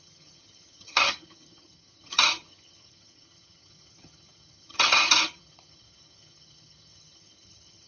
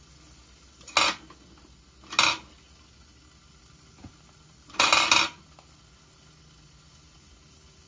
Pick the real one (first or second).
second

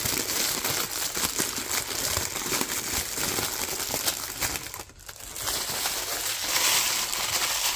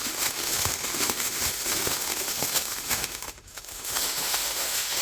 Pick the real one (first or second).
first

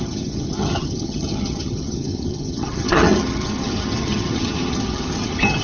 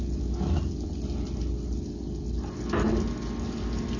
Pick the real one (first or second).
second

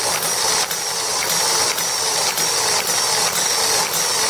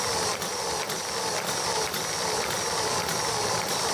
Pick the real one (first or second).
first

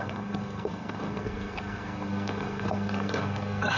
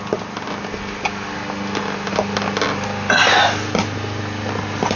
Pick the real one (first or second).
second